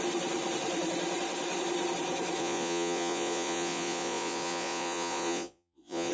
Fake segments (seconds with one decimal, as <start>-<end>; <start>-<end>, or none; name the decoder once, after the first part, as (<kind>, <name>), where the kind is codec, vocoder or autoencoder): 2.4-6.1 (vocoder, Vocos)